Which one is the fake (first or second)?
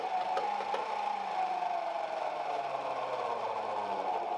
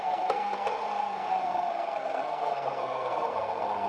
second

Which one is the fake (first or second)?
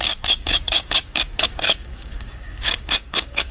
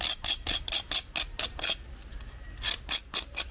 first